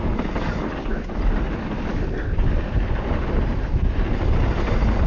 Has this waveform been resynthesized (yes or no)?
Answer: no